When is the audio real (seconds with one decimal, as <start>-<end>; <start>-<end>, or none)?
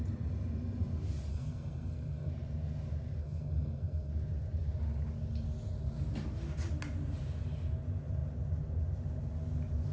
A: 0.0-1.3; 2.3-3.2; 4.1-9.9